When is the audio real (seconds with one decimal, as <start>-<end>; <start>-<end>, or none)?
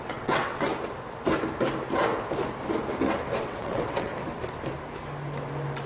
0.7-3.4; 4.1-5.9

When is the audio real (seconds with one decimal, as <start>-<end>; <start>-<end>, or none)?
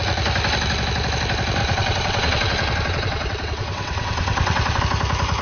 0.0-1.6; 4.8-5.4